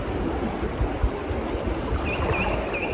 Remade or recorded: recorded